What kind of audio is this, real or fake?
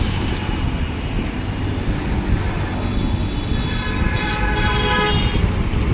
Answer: real